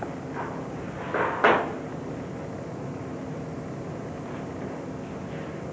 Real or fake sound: real